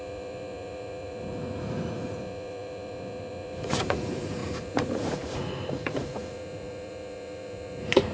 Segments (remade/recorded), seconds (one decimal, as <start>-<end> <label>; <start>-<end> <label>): 0.0-8.1 remade